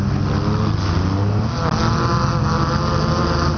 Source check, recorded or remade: recorded